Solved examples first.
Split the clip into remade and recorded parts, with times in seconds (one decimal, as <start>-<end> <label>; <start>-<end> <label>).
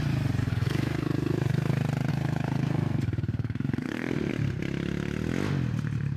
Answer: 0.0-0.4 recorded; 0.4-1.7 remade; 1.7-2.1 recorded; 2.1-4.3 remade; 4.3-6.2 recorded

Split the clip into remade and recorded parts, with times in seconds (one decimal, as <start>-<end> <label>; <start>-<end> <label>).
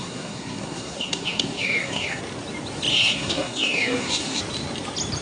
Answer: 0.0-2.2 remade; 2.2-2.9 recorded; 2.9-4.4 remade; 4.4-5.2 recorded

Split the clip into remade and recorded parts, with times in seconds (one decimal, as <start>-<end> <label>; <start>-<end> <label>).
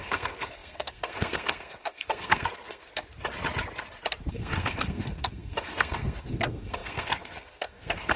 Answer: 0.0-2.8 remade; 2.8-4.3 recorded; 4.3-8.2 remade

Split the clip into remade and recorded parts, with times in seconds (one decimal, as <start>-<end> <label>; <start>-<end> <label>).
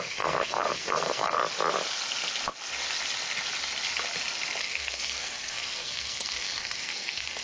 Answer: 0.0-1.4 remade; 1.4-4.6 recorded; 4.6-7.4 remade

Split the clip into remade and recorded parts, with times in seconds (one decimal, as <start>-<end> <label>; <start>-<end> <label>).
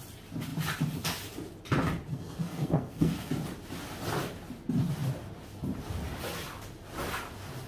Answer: 0.0-2.1 recorded; 2.1-3.3 remade; 3.3-7.7 recorded